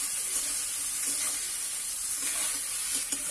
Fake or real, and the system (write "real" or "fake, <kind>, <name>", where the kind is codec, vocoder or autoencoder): real